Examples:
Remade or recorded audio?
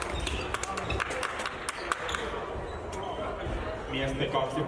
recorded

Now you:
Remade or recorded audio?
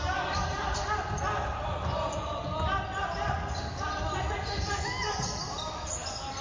recorded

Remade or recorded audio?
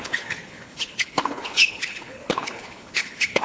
remade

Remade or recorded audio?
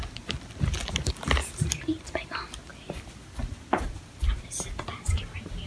recorded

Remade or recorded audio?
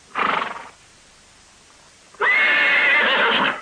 recorded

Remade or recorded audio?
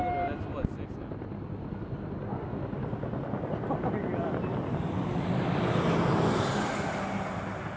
recorded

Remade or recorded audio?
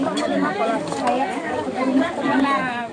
remade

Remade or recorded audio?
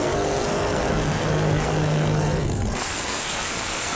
remade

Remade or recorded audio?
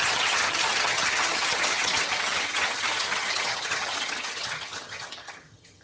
remade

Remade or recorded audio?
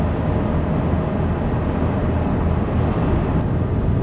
recorded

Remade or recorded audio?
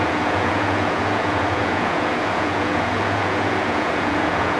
remade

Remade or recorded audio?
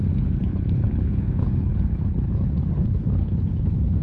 remade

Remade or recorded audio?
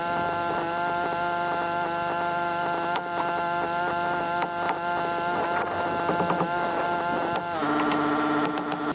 recorded